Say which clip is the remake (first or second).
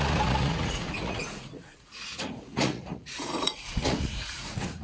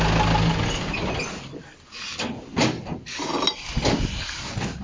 first